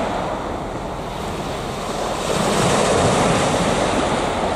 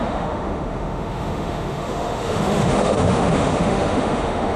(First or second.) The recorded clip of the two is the first